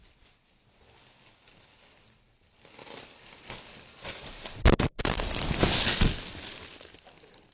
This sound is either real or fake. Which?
real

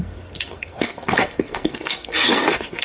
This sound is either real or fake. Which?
fake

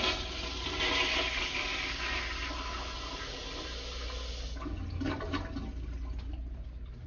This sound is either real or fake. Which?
real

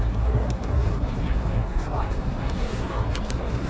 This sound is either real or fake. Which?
fake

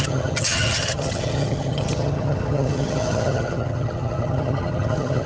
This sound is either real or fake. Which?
fake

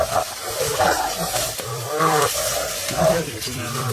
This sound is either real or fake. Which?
fake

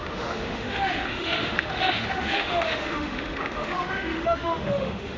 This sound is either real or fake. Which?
fake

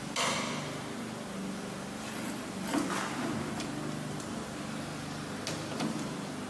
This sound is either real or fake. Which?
real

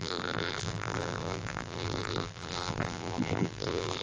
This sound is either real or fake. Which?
fake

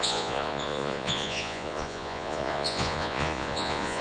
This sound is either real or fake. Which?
fake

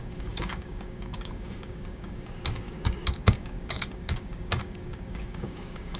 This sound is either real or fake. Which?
fake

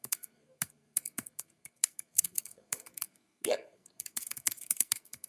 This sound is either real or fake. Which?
fake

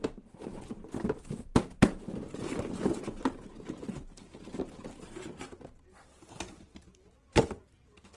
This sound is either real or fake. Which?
real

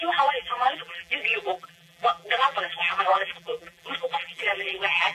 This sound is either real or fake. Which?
fake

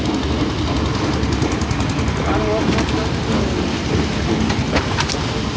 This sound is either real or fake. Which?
real